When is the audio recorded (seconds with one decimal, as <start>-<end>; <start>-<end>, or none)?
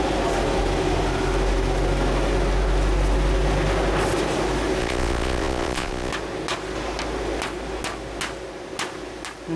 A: 0.0-4.8; 6.1-9.6